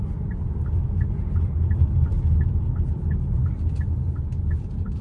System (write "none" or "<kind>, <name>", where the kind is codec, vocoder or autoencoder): none